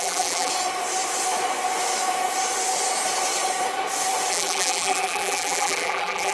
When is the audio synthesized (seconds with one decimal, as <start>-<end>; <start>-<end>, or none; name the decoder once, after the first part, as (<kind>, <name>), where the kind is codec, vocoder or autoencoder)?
0.0-0.5 (vocoder, BigVGAN v2); 4.3-6.3